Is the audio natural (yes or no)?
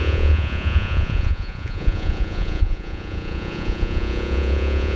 no